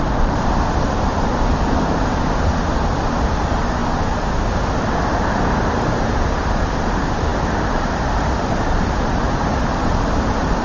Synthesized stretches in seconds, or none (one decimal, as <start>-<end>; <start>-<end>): 0.0-3.8; 4.5-10.6